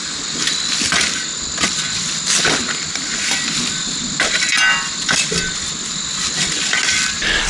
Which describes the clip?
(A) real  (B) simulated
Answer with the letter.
A